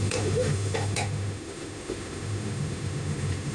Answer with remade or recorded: remade